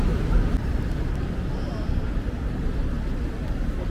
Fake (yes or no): no